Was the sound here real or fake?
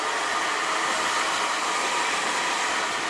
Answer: real